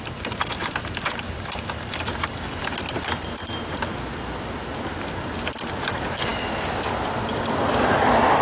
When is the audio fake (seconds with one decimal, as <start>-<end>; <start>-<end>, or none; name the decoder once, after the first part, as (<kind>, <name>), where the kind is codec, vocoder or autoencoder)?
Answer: 0.6-2.3 (vocoder, BigVGAN v2)